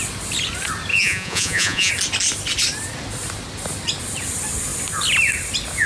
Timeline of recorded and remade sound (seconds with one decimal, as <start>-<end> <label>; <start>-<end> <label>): 0.0-0.9 recorded; 0.9-1.9 remade; 1.9-5.9 recorded